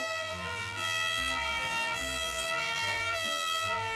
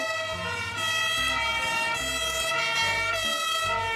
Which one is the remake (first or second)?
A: first